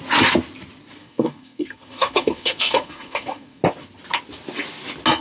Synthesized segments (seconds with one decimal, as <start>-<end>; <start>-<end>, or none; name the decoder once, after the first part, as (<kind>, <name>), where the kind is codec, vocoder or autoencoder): 1.0-3.6 (codec, SNAC)